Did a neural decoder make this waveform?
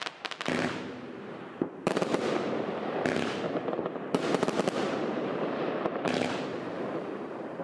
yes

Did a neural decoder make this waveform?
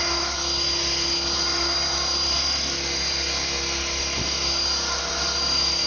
no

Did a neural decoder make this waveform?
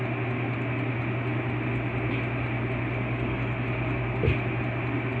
no